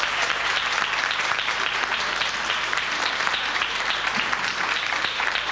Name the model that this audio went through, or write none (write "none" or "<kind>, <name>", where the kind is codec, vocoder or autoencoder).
vocoder, BigVGAN v2